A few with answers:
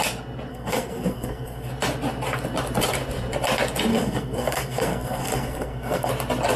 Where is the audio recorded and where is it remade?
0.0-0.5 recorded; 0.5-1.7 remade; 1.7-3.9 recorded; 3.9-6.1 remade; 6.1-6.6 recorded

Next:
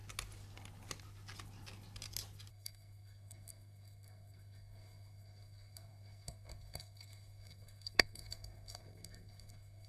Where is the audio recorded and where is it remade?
0.0-2.5 recorded; 2.5-9.9 remade

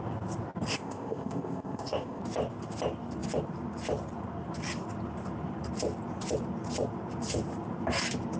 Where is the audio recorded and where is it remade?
0.0-0.7 recorded; 0.7-2.2 remade; 2.2-8.4 recorded

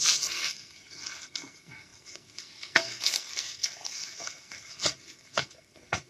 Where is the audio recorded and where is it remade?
0.0-6.1 remade

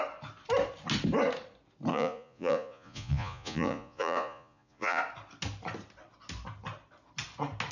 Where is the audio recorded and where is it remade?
0.0-1.9 recorded; 1.9-5.0 remade; 5.0-7.7 recorded